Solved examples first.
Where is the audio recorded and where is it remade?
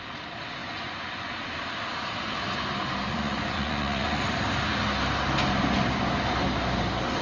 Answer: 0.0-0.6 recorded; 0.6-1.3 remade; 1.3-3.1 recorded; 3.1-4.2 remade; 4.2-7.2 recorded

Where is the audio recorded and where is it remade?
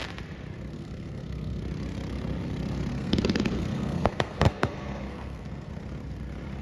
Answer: 0.0-0.7 recorded; 0.7-1.6 remade; 1.6-2.9 recorded; 2.9-5.7 remade; 5.7-6.6 recorded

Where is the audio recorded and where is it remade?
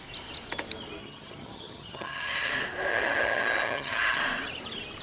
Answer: 0.0-1.0 recorded; 1.0-2.5 remade; 2.5-2.9 recorded; 2.9-4.2 remade; 4.2-5.0 recorded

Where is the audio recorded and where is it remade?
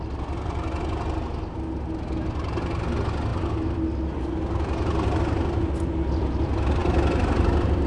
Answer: 0.0-7.9 recorded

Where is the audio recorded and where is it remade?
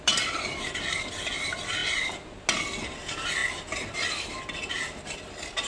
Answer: 0.0-5.7 recorded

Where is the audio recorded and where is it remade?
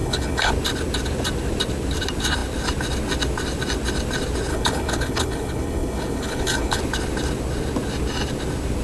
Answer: 0.0-0.5 remade; 0.5-4.5 recorded; 4.5-6.8 remade; 6.8-8.8 recorded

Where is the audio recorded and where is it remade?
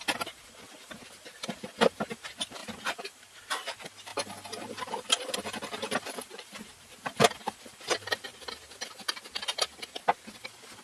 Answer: 0.0-2.6 recorded; 2.6-3.5 remade; 3.5-4.1 recorded; 4.1-7.6 remade; 7.6-8.3 recorded; 8.3-9.1 remade; 9.1-10.8 recorded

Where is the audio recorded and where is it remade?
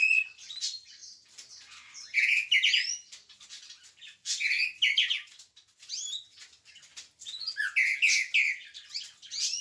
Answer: 0.0-9.6 recorded